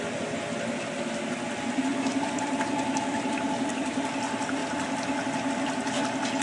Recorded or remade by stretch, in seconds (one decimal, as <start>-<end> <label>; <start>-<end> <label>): 0.0-6.4 recorded